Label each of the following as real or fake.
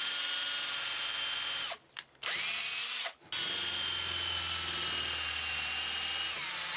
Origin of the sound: real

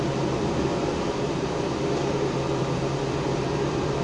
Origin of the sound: fake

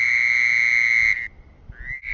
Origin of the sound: real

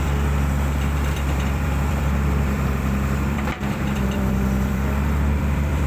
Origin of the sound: fake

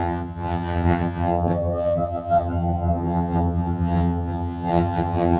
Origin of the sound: fake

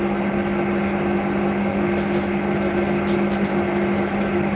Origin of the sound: real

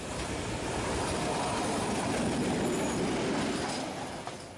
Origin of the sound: real